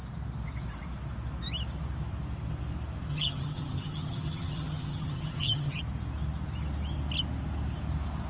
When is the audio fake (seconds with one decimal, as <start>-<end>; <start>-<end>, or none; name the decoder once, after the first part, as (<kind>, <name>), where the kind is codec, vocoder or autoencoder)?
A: 3.1-5.8 (vocoder, HiFi-GAN)